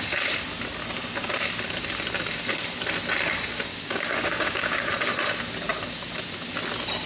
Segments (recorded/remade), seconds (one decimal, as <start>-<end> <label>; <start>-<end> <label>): 0.0-3.7 recorded; 3.7-4.9 remade; 4.9-7.1 recorded